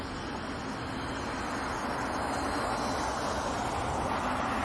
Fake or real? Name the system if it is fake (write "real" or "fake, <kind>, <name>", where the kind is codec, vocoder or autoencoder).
real